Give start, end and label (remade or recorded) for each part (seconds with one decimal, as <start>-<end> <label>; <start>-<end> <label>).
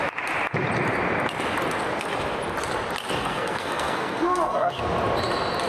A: 0.0-3.2 recorded; 3.2-4.8 remade; 4.8-5.7 recorded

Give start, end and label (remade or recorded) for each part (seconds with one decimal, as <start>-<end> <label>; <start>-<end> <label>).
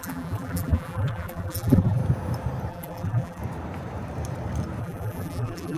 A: 0.0-2.0 remade; 2.0-2.7 recorded; 2.7-3.4 remade; 3.4-4.8 recorded; 4.8-5.8 remade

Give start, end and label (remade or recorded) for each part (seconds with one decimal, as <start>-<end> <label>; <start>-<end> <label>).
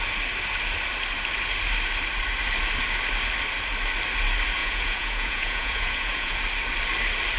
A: 0.0-4.6 recorded; 4.6-6.4 remade; 6.4-7.4 recorded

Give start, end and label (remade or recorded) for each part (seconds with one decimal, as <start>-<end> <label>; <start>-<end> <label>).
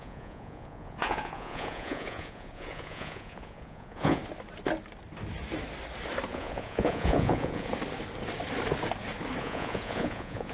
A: 0.0-4.2 remade; 4.2-6.3 recorded; 6.3-7.7 remade; 7.7-9.4 recorded; 9.4-10.5 remade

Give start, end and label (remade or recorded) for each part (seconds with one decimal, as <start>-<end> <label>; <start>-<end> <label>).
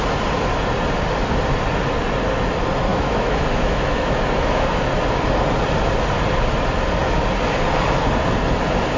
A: 0.0-2.9 recorded; 2.9-4.8 remade; 4.8-9.0 recorded